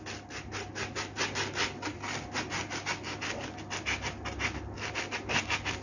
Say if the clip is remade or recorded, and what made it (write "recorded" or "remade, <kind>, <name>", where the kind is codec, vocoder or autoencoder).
recorded